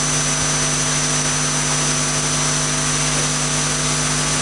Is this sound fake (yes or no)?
no